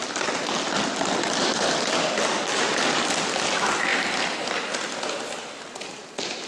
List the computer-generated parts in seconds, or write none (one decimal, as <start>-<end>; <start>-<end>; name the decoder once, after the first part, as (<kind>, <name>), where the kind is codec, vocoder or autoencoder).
none